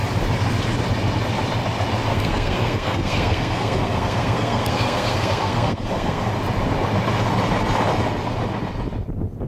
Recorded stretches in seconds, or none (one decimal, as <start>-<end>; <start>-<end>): 0.0-2.1; 6.3-9.5